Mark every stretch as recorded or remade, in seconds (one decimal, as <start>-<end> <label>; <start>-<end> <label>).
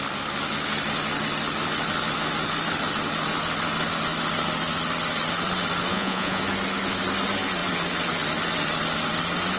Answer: 0.0-5.9 recorded; 5.9-6.4 remade; 6.4-9.6 recorded